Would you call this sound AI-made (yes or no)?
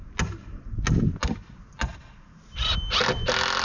no